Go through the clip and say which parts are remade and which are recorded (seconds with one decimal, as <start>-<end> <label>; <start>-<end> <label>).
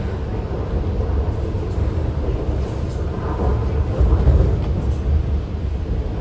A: 0.0-6.2 recorded